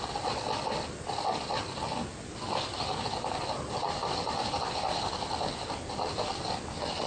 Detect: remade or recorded recorded